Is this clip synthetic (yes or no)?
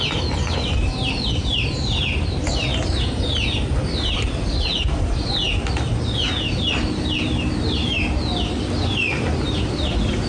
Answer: no